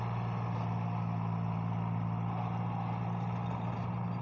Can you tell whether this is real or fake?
real